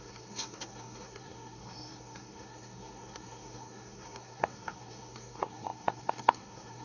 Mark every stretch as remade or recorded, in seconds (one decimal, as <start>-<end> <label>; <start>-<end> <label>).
0.0-6.8 remade